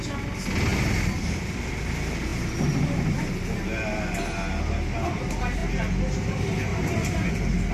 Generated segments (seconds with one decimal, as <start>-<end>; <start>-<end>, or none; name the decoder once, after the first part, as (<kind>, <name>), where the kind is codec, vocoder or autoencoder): 6.7-7.3 (vocoder, BigVGAN v2)

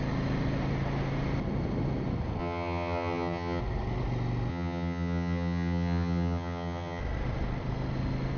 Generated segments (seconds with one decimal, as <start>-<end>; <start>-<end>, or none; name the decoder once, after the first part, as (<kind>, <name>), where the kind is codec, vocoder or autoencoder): 2.4-3.6 (vocoder, HiFi-GAN); 4.5-7.0

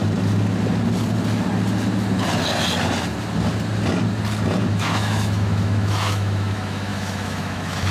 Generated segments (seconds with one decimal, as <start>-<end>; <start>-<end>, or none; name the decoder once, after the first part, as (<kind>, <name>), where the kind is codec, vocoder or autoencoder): 4.7-7.9 (autoencoder, DAC-VAE)

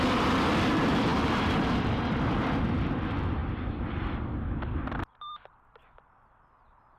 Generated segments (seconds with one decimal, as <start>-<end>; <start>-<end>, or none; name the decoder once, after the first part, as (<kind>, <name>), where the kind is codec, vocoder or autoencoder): 0.0-7.0 (vocoder, BigVGAN v2)

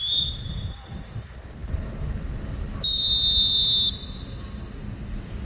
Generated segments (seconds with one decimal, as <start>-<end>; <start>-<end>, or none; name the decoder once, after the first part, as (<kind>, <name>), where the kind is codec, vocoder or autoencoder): none

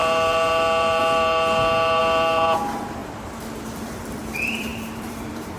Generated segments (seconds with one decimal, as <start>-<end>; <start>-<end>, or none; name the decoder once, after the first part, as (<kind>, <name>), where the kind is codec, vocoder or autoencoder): 0.0-3.0 (vocoder, BigVGAN v2); 3.8-5.6

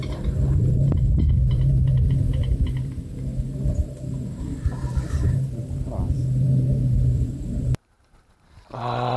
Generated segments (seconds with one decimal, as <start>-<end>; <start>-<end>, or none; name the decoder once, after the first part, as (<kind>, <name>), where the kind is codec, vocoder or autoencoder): 0.0-9.2 (vocoder, BigVGAN v2)

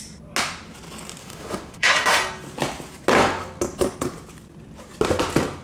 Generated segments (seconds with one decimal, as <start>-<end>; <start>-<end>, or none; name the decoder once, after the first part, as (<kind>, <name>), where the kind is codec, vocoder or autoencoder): 1.2-2.2 (autoencoder, DAC-VAE)